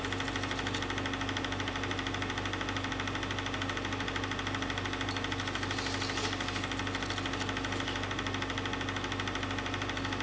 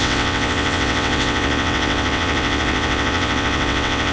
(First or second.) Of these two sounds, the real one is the first